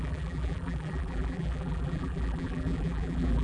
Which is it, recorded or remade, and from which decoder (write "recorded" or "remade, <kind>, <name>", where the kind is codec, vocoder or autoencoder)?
remade, vocoder, BigVGAN v2